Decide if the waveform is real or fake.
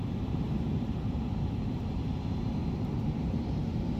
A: fake